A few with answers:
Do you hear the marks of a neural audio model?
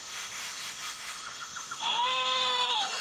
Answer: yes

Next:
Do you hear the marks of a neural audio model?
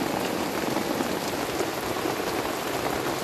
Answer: no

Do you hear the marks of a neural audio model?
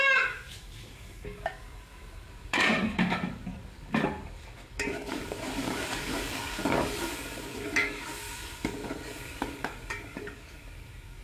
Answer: yes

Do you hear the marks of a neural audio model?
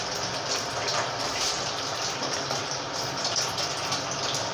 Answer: yes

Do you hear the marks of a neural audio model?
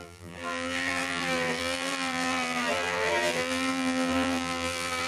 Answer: yes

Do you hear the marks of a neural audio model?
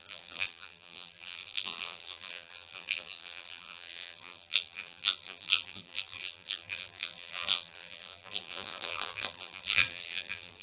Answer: yes